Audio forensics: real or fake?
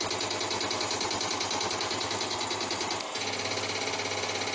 real